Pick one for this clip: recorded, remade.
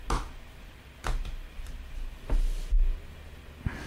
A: recorded